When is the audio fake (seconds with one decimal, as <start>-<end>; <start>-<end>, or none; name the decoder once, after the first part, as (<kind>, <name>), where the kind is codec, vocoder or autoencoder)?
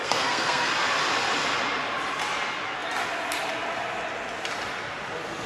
0.0-0.7 (codec, SNAC)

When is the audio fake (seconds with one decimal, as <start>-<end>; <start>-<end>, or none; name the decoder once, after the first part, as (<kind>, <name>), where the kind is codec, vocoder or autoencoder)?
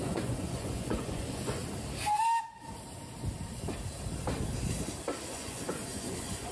0.0-1.6 (vocoder, Vocos); 5.3-6.5